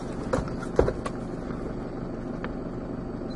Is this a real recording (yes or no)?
yes